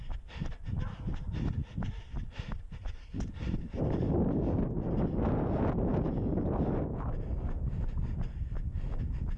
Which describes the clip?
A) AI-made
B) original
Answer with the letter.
B